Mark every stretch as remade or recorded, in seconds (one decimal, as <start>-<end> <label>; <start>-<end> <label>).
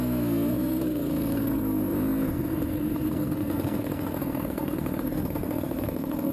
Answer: 0.0-6.3 remade